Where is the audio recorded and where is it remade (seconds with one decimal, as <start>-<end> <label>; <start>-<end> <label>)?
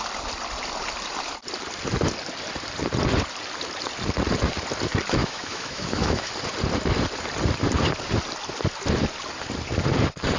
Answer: 0.0-5.2 recorded; 5.2-6.3 remade; 6.3-10.4 recorded